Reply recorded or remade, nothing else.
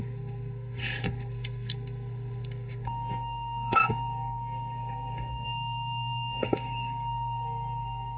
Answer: remade